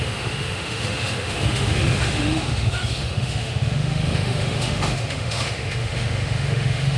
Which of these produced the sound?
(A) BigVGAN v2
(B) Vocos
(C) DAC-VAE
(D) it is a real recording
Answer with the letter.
C